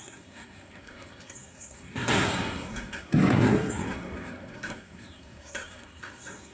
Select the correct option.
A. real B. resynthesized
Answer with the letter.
B